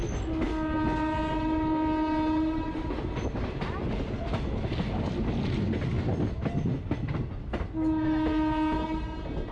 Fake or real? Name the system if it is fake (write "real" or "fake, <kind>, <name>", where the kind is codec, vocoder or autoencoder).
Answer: real